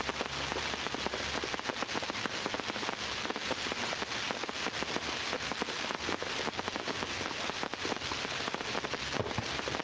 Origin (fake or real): real